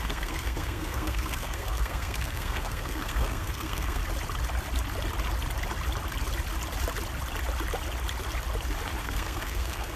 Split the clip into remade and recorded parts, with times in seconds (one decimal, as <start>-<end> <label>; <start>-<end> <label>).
0.0-4.0 remade; 4.0-9.0 recorded; 9.0-10.0 remade